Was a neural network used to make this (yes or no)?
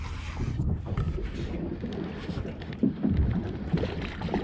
no